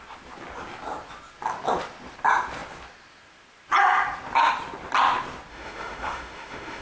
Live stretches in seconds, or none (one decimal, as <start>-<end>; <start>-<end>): 0.0-5.5